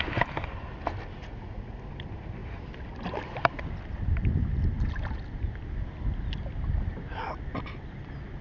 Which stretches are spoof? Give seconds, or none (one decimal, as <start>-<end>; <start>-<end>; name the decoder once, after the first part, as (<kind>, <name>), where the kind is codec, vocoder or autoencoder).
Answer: 1.2-1.8 (vocoder, Vocos)